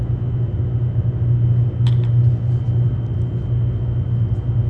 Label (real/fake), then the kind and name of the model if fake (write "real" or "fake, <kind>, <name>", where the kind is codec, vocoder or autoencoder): real